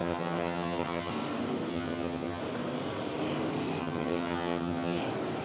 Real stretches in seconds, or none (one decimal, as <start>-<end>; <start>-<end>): 1.1-1.7; 2.4-3.8; 5.0-5.4